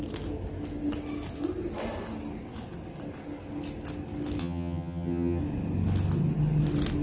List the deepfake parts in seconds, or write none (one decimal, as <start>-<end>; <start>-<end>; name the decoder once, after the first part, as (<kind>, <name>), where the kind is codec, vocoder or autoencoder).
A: 4.4-5.4 (vocoder, HiFi-GAN)

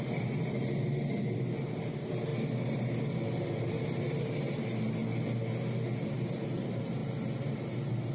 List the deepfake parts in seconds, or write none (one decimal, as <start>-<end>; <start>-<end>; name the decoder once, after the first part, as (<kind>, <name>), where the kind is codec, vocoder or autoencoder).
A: 0.0-2.3 (vocoder, BigVGAN v2); 3.5-5.0; 6.1-8.1

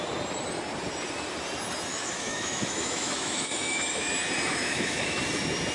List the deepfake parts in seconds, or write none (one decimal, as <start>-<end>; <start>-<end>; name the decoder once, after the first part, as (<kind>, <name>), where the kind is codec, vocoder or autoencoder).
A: 1.9-4.1 (autoencoder, DAC-VAE); 4.5-5.2